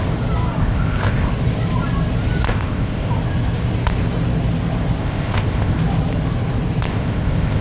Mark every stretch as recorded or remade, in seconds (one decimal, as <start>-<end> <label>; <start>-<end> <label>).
0.0-0.6 recorded; 0.6-1.3 remade; 1.3-2.5 recorded; 2.5-3.1 remade; 3.1-5.0 recorded; 5.0-5.8 remade; 5.8-6.9 recorded; 6.9-7.6 remade